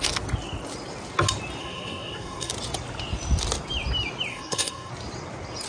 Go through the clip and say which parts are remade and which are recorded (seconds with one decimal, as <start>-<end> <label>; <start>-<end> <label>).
0.0-1.6 recorded; 1.6-2.5 remade; 2.5-4.3 recorded; 4.3-4.9 remade; 4.9-5.7 recorded